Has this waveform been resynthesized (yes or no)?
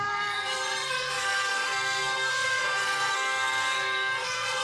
yes